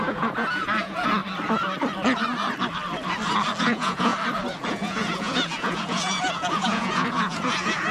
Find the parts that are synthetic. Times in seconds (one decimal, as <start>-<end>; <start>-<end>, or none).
0.0-1.2; 3.6-4.1; 4.7-7.9